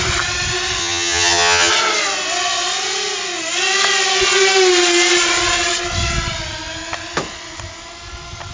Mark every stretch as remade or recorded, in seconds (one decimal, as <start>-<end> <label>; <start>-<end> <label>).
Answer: 0.0-0.8 recorded; 0.8-1.7 remade; 1.7-8.5 recorded